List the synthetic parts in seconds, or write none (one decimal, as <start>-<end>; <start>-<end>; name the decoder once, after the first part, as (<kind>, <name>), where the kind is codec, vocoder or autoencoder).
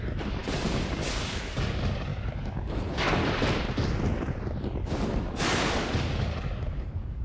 0.0-3.2 (codec, DAC); 5.4-7.2